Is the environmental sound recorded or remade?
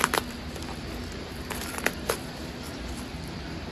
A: remade